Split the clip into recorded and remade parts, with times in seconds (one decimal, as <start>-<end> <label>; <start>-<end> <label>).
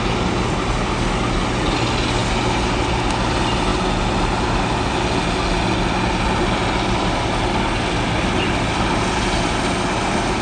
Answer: 0.0-10.4 recorded